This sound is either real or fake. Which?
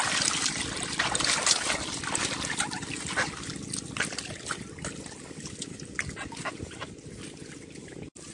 real